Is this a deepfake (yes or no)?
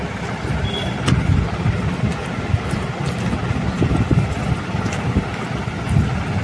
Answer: no